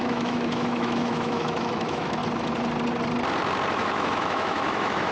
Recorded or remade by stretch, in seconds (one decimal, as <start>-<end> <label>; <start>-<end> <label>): 0.0-2.2 remade; 2.2-3.7 recorded; 3.7-5.1 remade